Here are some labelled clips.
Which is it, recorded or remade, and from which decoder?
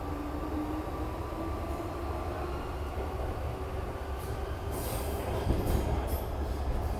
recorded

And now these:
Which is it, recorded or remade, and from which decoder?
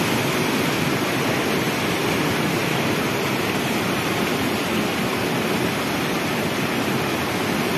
recorded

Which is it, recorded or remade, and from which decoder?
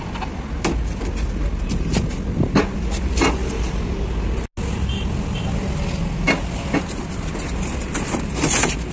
recorded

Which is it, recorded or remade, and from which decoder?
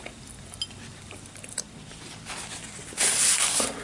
recorded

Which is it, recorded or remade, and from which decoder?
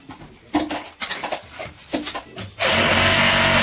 recorded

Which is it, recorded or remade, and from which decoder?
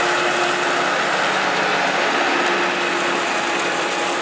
recorded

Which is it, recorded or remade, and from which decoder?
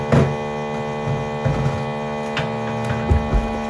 recorded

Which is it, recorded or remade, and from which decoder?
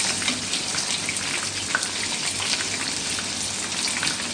recorded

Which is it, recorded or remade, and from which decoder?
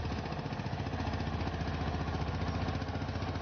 recorded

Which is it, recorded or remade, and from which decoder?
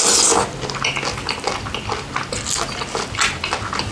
recorded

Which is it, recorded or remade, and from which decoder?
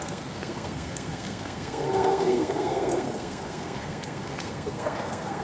remade, codec, SNAC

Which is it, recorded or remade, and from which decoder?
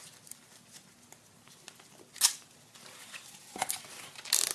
recorded